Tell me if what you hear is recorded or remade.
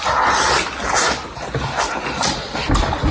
recorded